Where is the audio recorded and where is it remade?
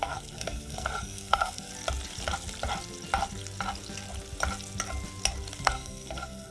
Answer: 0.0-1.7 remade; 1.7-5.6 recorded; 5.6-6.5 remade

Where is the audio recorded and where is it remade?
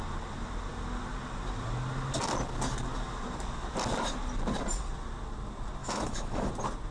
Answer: 0.0-5.8 recorded; 5.8-6.5 remade; 6.5-6.9 recorded